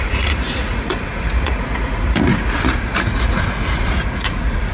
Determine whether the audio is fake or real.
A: fake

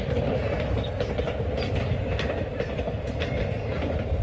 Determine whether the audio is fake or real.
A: real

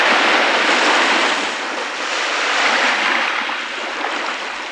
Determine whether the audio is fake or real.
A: real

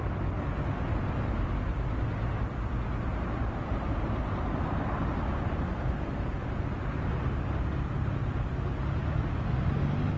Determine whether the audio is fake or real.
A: real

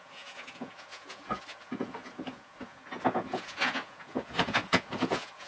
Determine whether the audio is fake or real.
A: fake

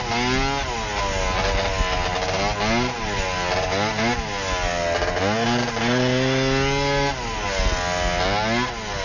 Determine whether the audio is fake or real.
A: real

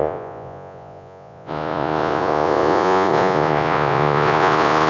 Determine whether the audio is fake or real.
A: fake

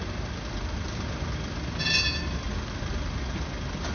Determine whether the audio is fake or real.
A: real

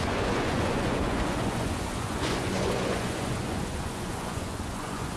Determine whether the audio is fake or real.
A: fake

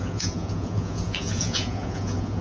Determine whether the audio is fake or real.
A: fake